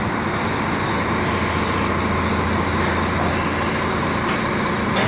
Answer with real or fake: real